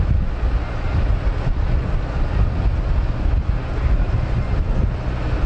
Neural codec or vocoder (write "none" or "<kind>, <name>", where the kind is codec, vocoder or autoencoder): none